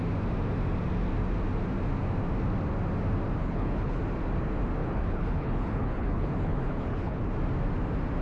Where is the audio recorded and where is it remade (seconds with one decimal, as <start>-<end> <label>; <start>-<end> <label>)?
0.0-3.4 recorded; 3.4-4.0 remade; 4.0-4.8 recorded; 4.8-7.2 remade; 7.2-8.2 recorded